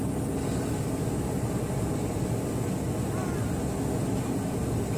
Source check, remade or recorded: recorded